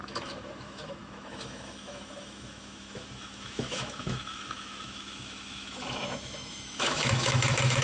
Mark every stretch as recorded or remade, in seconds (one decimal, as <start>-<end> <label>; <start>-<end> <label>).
0.0-7.8 remade